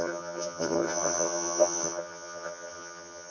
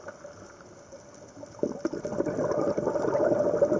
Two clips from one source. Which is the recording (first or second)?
second